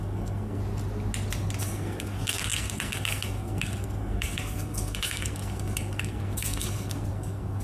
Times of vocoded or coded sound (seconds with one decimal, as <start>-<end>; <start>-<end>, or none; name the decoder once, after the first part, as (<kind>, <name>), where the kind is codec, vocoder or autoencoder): 0.0-0.6 (codec, SNAC); 1.6-7.6